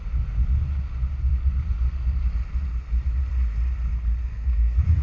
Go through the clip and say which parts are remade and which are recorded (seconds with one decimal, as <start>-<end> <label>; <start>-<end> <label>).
0.0-4.2 recorded; 4.2-5.0 remade